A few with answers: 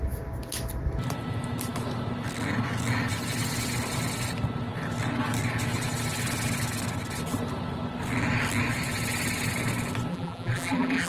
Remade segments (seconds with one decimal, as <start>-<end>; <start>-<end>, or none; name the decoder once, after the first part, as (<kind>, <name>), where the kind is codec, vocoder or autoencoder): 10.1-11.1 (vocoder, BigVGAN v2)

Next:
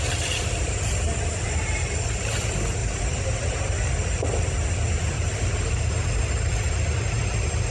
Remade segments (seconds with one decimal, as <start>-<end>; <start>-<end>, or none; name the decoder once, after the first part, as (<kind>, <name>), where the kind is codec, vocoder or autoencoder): 2.8-3.6 (vocoder, BigVGAN v2)

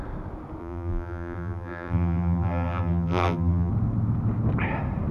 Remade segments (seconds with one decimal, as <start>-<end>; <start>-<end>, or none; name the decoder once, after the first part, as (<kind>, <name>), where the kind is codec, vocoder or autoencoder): 0.6-3.7 (vocoder, BigVGAN v2)

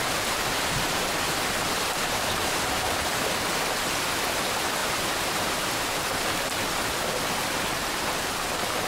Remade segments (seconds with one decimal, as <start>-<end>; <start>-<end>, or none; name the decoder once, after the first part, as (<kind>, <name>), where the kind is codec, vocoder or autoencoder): 4.8-5.7 (vocoder, BigVGAN v2)

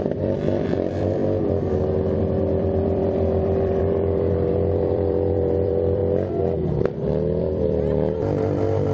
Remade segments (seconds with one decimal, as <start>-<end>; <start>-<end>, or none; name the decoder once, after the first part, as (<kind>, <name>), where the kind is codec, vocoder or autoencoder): 0.0-1.2 (vocoder, BigVGAN v2); 2.2-6.0; 7.4-8.9

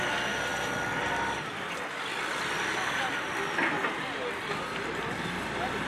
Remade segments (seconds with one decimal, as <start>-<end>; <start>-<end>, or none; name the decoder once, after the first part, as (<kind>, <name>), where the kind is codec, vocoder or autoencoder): none

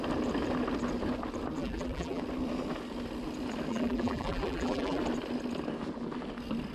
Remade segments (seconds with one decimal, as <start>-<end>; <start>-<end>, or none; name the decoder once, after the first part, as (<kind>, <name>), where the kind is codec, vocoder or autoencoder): 1.6-2.2 (vocoder, BigVGAN v2); 3.7-5.0

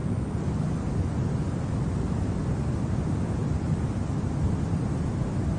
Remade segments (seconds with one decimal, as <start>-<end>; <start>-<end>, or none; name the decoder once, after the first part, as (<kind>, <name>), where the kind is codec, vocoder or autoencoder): 3.4-5.6 (vocoder, BigVGAN v2)